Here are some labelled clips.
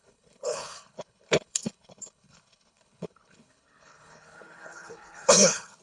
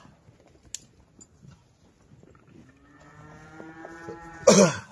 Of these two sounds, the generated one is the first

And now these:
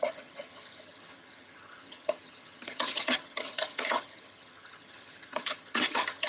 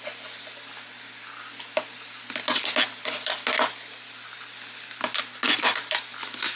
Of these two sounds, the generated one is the first